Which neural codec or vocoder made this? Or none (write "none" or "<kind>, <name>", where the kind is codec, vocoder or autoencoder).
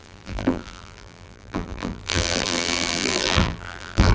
vocoder, BigVGAN v2